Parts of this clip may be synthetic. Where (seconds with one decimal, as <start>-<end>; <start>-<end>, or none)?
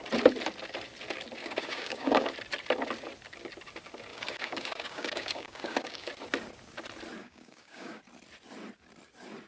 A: 1.4-2.3; 4.1-6.1; 7.2-8.0